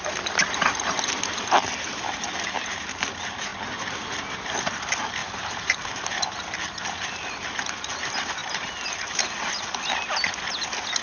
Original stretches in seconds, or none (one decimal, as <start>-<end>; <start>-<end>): 0.0-5.2; 6.3-8.4; 9.5-11.0